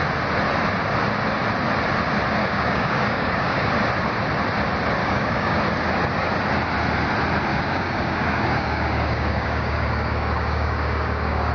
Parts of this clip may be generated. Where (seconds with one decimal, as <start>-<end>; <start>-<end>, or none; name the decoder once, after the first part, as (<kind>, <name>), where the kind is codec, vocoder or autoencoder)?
2.4-3.7 (codec, DAC); 5.0-5.6; 7.5-11.5